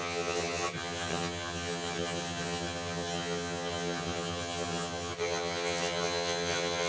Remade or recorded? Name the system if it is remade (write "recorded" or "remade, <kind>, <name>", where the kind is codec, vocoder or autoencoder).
remade, vocoder, HiFi-GAN